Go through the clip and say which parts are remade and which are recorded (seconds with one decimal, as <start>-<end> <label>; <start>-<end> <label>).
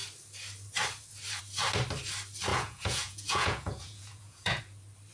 0.0-2.5 recorded; 2.5-4.6 remade; 4.6-5.1 recorded